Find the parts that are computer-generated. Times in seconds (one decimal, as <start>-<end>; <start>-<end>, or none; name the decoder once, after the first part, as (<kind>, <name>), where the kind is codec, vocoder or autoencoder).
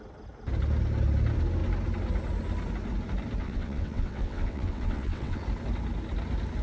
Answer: 3.4-5.4 (vocoder, WaveNeXt)